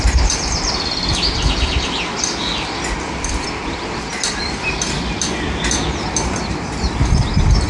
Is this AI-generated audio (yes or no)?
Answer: yes